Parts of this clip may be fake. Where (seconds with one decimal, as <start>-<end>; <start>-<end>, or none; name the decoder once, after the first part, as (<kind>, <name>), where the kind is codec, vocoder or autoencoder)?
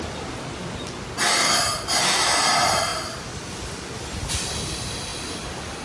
none